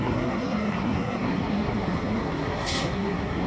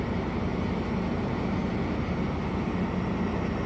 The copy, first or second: first